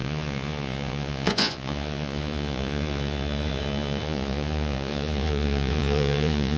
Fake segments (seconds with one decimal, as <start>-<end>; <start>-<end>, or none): 0.0-6.6